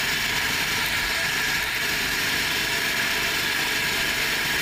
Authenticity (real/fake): real